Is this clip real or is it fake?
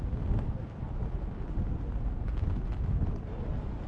real